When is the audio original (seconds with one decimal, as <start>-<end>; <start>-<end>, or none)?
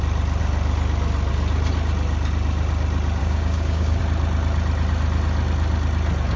0.0-3.2; 4.0-6.4